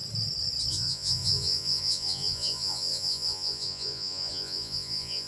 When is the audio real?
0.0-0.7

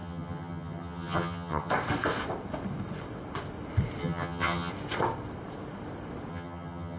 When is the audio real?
1.7-4.0; 4.7-6.3

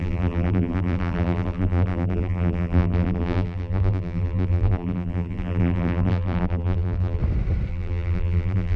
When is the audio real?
7.2-7.7

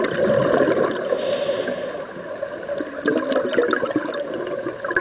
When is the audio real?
0.0-5.0